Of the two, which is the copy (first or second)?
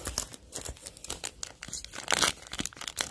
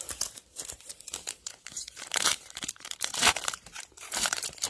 second